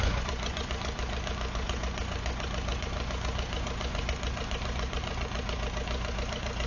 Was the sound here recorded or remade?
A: remade